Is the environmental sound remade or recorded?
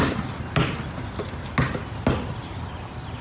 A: recorded